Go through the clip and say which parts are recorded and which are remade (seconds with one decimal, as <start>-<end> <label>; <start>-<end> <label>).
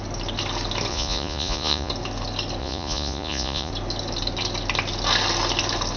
0.0-0.9 recorded; 0.9-1.9 remade; 1.9-2.6 recorded; 2.6-3.7 remade; 3.7-6.0 recorded